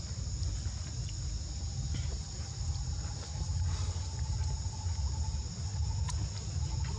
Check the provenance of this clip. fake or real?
real